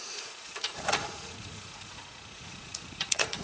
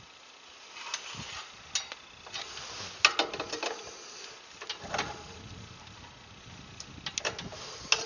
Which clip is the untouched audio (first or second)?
second